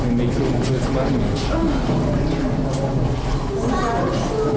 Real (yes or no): yes